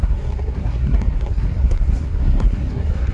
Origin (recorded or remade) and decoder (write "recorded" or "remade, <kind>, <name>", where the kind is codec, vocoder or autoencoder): remade, codec, SNAC